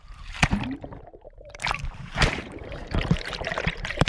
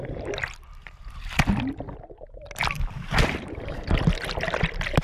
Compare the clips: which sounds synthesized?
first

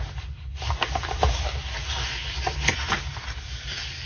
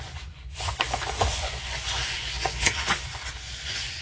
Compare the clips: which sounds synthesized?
second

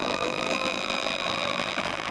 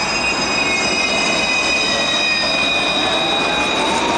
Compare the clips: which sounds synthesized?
first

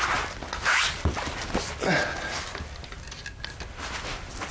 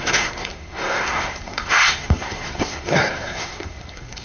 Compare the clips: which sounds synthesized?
second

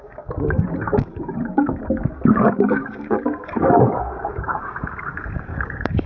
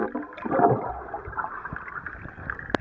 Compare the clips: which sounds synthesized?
first